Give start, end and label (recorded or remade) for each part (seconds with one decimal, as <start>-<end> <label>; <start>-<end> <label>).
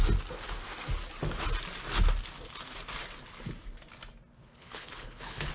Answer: 0.0-4.4 recorded; 4.4-5.5 remade